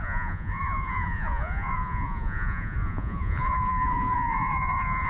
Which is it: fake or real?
fake